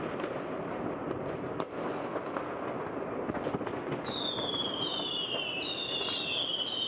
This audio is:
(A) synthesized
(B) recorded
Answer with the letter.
B